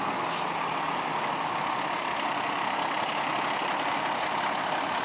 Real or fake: real